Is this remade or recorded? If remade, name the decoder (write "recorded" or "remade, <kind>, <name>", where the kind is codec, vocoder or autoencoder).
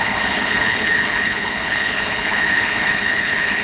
remade, codec, HILCodec